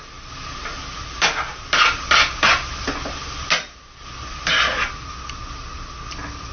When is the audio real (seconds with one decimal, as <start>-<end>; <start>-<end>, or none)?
0.0-6.5